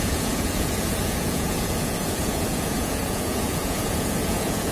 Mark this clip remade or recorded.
remade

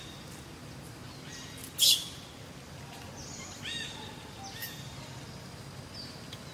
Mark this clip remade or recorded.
recorded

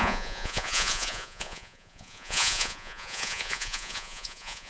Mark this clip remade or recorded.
remade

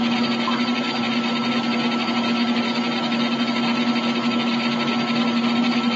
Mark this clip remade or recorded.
recorded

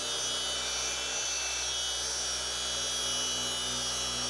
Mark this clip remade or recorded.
recorded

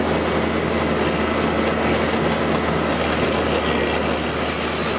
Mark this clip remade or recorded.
recorded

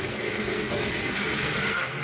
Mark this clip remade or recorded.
remade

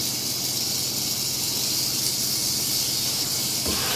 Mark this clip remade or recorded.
recorded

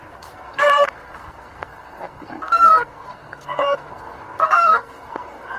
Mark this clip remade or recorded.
remade